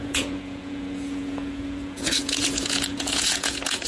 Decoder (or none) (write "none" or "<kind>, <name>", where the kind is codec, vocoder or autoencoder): vocoder, Vocos